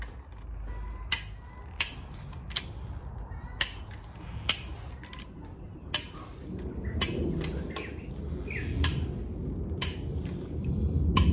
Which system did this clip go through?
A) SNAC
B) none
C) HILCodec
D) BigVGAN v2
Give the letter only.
B